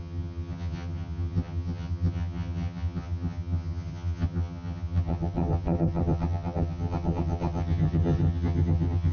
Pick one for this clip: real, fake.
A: fake